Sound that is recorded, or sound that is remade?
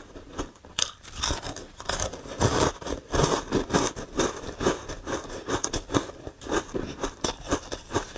remade